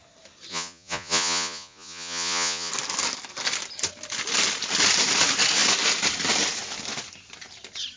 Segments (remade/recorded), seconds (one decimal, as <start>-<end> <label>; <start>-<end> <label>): 0.0-0.5 recorded; 0.5-2.7 remade; 2.7-8.0 recorded